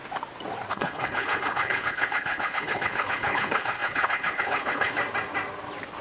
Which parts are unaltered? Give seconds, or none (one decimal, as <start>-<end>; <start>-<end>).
0.0-0.7; 5.0-6.0